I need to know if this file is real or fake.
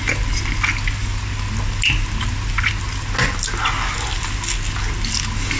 real